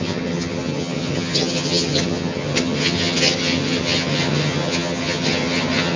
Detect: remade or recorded remade